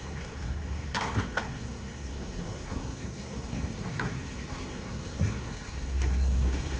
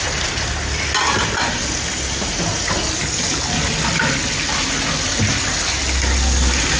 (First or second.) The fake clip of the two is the first